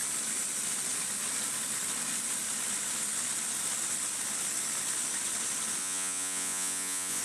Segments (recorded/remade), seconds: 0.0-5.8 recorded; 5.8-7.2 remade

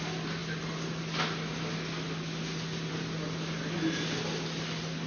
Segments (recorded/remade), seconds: 0.0-5.1 recorded

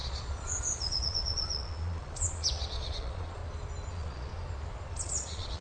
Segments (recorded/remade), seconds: 0.0-3.4 remade; 3.4-3.9 recorded; 3.9-4.3 remade; 4.3-5.0 recorded; 5.0-5.6 remade

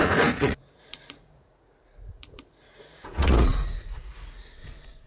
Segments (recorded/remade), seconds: 0.0-5.1 remade

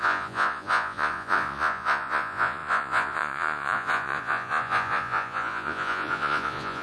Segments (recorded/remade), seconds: 0.0-6.8 remade

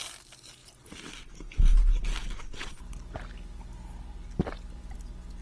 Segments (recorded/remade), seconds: 0.0-5.4 recorded

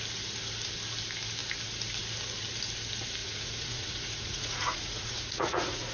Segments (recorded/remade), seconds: 0.0-3.2 recorded; 3.2-5.9 remade